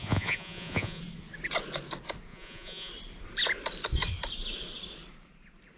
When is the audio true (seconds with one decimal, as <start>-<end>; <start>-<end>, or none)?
1.0-2.3; 2.9-5.8